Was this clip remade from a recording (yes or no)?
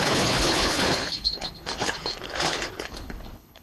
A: yes